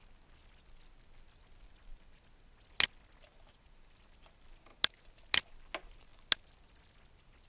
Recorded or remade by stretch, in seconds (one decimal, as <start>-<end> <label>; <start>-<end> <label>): 0.0-7.5 recorded